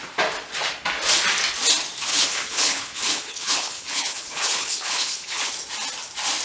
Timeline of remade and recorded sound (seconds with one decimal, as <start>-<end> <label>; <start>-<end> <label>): 0.0-2.1 recorded; 2.1-5.5 remade; 5.5-6.4 recorded